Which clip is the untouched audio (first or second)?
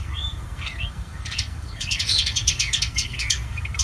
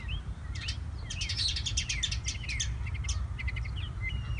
second